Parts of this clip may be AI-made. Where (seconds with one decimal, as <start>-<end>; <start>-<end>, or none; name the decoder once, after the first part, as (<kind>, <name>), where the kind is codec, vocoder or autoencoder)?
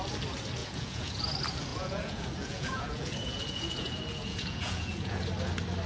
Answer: 0.6-1.2 (vocoder, Vocos); 1.7-5.2